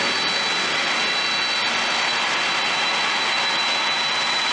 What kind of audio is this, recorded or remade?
recorded